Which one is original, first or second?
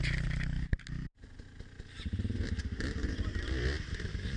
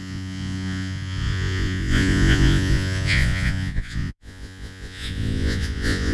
first